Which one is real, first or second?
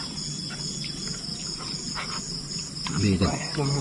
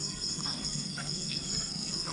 first